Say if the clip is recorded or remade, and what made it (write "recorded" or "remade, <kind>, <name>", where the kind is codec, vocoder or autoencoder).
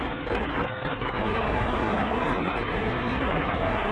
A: remade, codec, SNAC